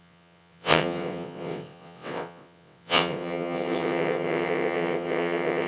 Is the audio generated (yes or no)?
yes